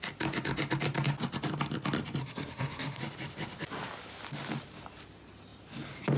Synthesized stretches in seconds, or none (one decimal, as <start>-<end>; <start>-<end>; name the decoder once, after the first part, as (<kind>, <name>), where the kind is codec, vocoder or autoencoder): 2.2-3.0 (codec, SNAC)

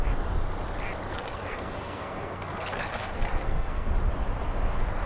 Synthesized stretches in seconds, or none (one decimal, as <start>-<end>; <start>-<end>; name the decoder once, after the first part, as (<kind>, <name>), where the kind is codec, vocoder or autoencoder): 1.1-3.9 (codec, SNAC)

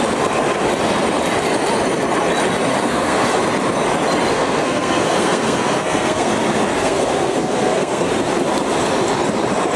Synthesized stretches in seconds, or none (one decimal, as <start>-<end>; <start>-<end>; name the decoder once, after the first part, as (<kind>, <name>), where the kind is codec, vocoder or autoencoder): 2.9-3.4 (codec, SNAC); 4.3-6.3; 6.7-8.1

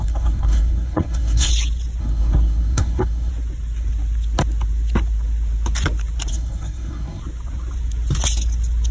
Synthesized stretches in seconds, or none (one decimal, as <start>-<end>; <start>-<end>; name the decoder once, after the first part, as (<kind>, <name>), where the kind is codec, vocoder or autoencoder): 0.0-1.5 (codec, SNAC); 2.0-3.3; 6.3-7.2

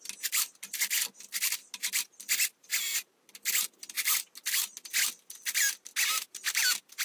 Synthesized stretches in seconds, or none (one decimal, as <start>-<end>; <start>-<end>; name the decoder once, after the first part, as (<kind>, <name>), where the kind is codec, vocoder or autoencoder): none

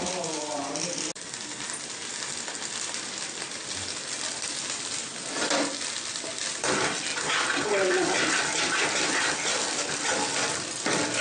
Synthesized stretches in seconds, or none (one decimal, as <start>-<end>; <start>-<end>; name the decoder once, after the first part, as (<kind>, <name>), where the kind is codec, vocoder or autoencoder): none